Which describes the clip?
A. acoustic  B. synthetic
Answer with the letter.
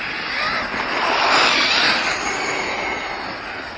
A